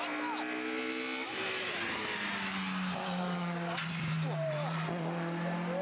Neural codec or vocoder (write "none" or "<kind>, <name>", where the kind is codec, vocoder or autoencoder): none